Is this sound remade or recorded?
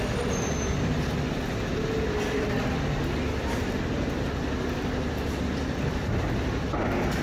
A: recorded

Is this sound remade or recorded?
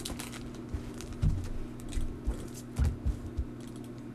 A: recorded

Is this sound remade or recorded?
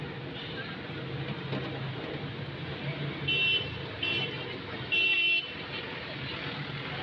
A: recorded